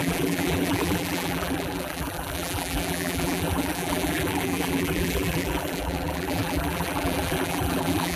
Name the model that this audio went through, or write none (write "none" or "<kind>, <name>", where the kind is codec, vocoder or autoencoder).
vocoder, BigVGAN v2